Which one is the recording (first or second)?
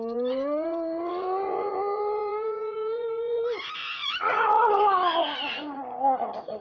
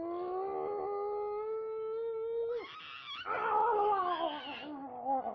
second